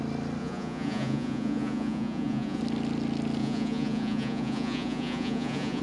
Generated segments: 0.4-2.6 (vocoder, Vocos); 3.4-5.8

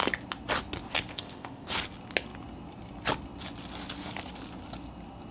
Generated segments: 1.1-1.7 (codec, ZipCodec)

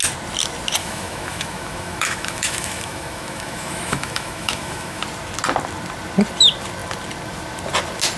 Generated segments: 0.8-5.0 (autoencoder, DAC-VAE)

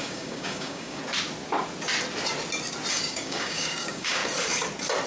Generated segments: 0.0-1.0 (codec, DAC); 2.9-4.2

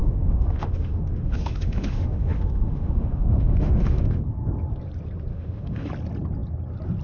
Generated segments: 0.0-4.2 (autoencoder, DAC-VAE); 5.3-5.9

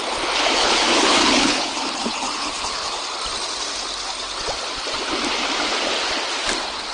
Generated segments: 0.6-3.0 (codec, HILCodec)

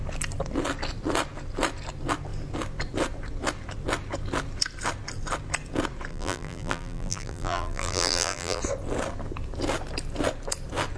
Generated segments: 6.1-8.6 (vocoder, BigVGAN v2)